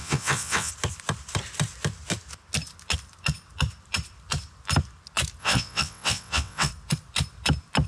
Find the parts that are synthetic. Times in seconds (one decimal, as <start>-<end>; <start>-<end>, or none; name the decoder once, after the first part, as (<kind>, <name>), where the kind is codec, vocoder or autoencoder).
0.0-0.7 (vocoder, WaveNeXt); 5.4-6.7